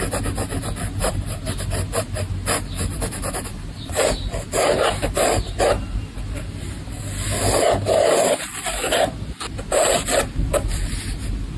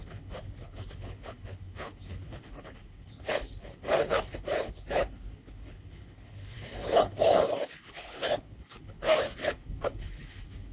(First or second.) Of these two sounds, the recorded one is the first